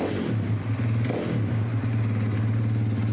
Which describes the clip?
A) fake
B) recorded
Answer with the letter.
B